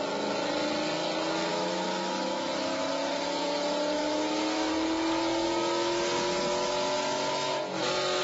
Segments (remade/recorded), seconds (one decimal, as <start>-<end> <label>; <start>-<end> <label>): 0.0-1.5 recorded; 1.5-2.9 remade; 2.9-4.0 recorded; 4.0-4.7 remade; 4.7-8.2 recorded